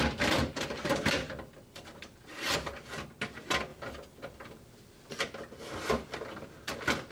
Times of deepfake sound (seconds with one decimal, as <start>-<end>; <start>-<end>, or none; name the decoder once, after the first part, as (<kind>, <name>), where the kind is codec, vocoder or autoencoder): 0.4-2.7 (vocoder, BigVGAN v2)